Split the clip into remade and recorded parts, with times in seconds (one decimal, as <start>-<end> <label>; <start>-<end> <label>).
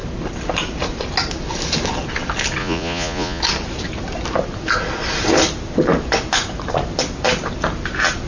0.0-2.6 recorded; 2.6-3.4 remade; 3.4-8.3 recorded